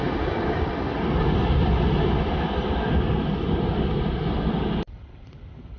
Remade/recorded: recorded